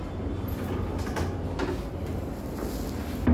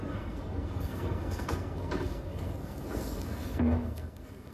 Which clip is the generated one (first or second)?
second